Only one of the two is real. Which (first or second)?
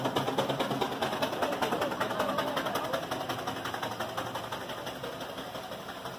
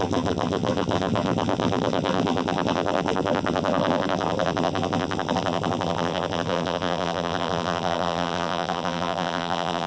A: first